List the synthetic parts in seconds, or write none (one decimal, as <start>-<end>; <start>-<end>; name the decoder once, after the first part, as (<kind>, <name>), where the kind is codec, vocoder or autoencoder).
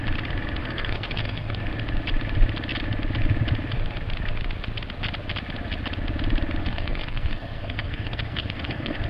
0.6-1.6 (codec, SNAC); 6.6-9.1